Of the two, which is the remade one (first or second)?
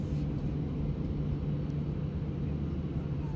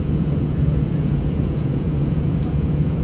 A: second